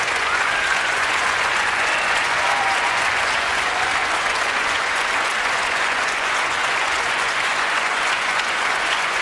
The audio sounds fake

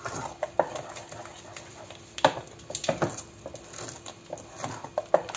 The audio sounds real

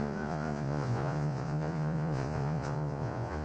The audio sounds fake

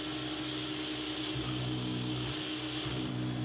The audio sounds real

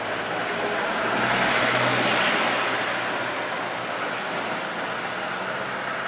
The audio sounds real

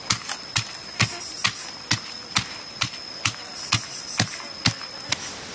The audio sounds real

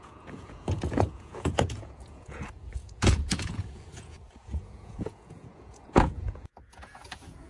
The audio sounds fake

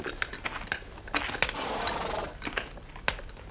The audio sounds real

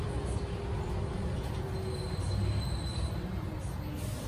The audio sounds real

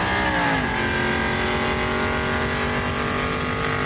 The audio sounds real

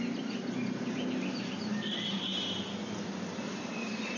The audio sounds real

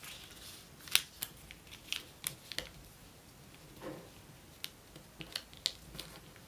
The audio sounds real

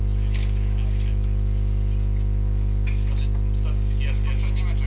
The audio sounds real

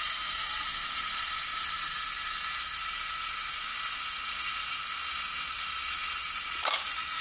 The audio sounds real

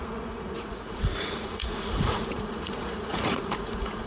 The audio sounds fake